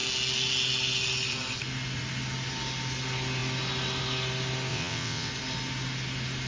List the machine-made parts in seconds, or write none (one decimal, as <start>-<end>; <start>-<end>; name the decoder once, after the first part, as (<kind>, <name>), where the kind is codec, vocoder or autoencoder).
4.7-5.3 (vocoder, WaveNeXt)